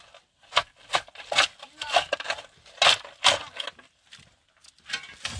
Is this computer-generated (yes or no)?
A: no